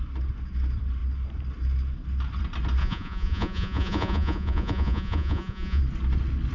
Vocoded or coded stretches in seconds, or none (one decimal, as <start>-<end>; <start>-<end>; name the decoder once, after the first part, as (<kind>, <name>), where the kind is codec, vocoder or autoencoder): 2.8-5.8 (vocoder, Vocos)